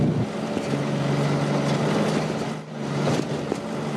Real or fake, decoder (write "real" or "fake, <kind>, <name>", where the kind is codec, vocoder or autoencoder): real